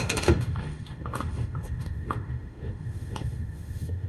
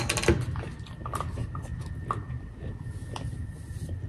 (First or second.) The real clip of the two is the second